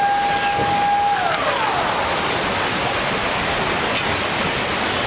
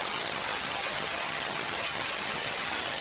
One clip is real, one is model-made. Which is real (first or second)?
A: first